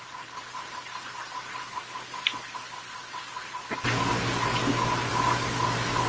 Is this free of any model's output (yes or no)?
yes